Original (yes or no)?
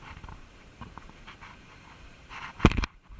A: no